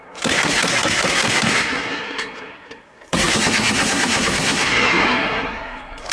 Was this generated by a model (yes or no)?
yes